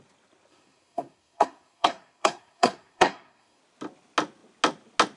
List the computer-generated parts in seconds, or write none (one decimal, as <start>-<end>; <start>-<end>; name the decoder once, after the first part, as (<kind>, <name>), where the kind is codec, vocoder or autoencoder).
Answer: 0.5-3.6 (codec, SNAC)